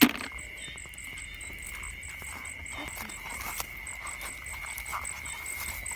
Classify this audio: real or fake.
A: real